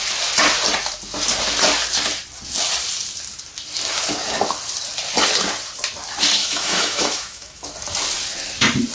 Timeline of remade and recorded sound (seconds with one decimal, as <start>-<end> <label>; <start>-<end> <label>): 0.0-6.4 recorded; 6.4-7.7 remade; 7.7-8.9 recorded